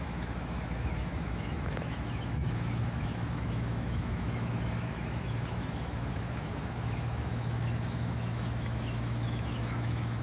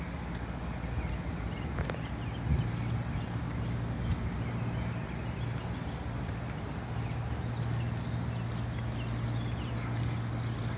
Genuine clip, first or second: second